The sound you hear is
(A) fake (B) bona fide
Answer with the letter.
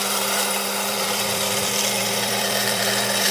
A